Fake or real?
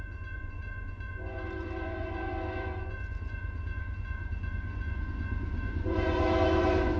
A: fake